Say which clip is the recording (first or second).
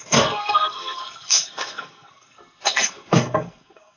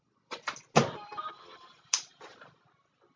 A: second